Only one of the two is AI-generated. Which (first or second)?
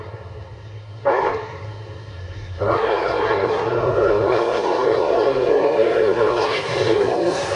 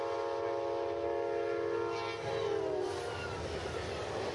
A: first